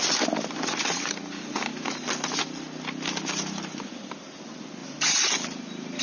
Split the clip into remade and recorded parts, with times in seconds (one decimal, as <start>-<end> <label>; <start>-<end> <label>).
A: 0.0-6.0 recorded